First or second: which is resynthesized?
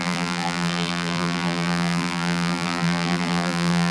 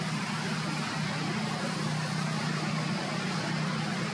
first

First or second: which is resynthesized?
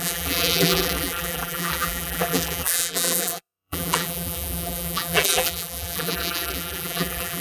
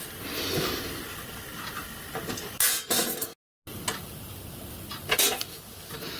first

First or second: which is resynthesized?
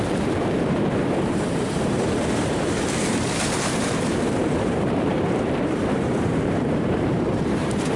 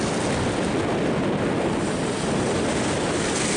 first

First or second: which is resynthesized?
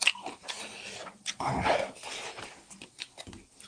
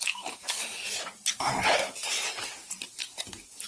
second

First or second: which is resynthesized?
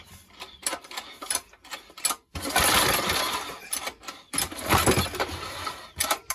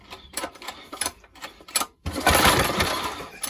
second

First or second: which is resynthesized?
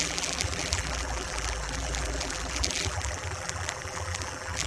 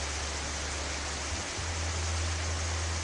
first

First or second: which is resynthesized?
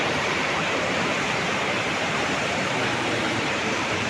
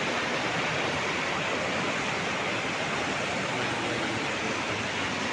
first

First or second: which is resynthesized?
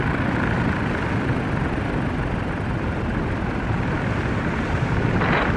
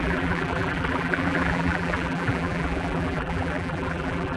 second